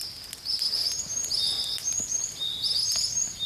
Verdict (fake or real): real